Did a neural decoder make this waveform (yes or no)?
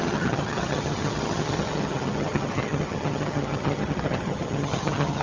yes